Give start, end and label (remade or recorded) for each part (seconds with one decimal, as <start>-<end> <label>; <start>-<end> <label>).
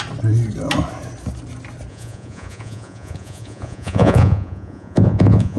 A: 0.0-1.9 recorded; 1.9-5.6 remade